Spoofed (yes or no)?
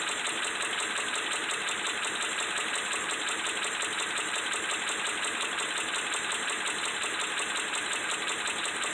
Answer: no